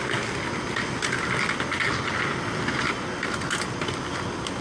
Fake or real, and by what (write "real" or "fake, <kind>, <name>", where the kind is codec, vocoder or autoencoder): real